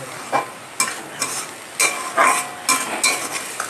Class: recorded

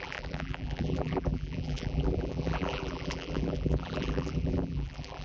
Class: remade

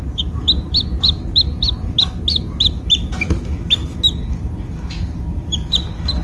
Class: recorded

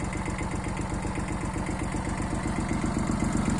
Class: recorded